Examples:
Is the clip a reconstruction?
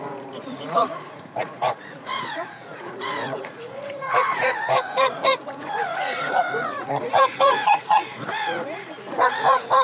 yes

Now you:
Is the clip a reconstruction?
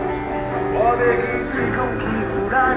no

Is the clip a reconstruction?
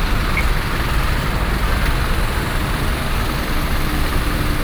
no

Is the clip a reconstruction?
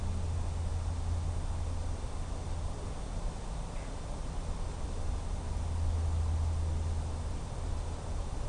no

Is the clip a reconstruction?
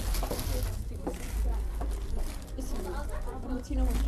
no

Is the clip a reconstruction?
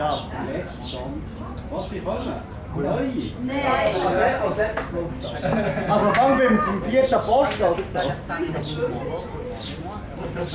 no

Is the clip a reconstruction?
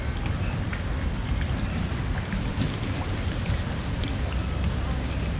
no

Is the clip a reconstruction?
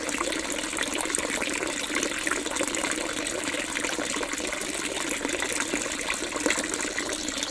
no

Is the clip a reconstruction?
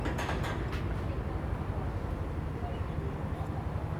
no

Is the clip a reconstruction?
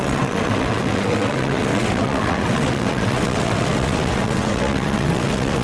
yes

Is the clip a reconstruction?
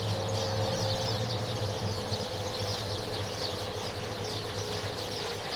no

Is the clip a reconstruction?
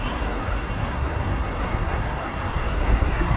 yes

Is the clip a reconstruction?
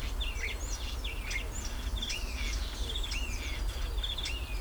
no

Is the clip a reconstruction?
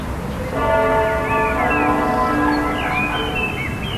no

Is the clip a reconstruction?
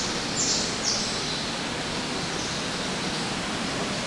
no